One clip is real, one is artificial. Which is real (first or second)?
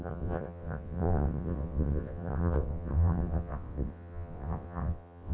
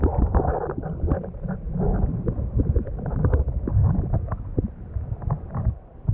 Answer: second